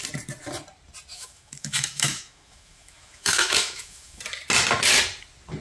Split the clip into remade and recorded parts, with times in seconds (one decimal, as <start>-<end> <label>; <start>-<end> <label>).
0.0-1.1 recorded; 1.1-4.2 remade; 4.2-5.6 recorded